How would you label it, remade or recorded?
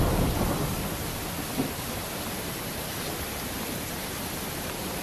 recorded